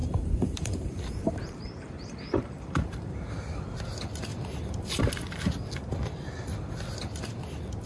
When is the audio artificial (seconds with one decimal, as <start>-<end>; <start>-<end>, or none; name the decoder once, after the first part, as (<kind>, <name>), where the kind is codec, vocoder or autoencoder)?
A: 0.0-3.3 (vocoder, BigVGAN v2); 4.3-5.0